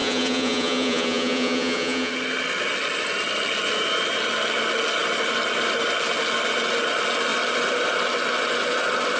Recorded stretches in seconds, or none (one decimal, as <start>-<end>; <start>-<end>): 2.1-9.2